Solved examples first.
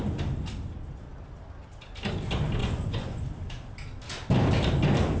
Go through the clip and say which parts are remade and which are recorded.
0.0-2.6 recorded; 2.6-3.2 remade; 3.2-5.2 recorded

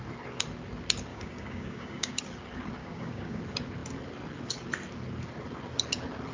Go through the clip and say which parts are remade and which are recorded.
0.0-1.1 recorded; 1.1-2.2 remade; 2.2-2.8 recorded; 2.8-3.4 remade; 3.4-6.3 recorded

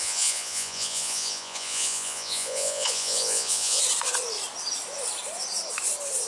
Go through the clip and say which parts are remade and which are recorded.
0.0-3.8 remade; 3.8-6.3 recorded

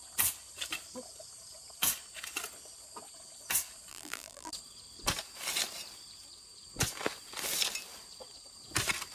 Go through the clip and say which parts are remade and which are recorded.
0.0-3.9 recorded; 3.9-4.5 remade; 4.5-9.1 recorded

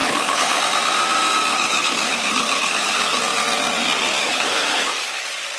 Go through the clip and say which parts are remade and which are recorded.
0.0-0.6 remade; 0.6-1.5 recorded; 1.5-3.2 remade; 3.2-4.2 recorded; 4.2-5.6 remade

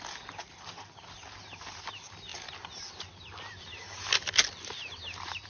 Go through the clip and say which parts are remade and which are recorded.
0.0-5.5 recorded